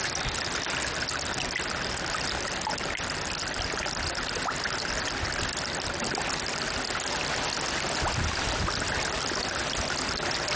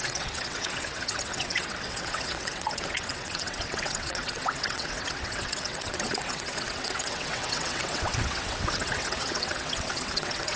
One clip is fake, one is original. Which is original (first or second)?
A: first